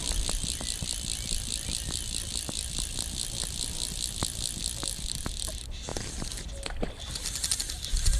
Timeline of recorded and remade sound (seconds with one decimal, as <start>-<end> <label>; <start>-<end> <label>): 0.0-8.2 recorded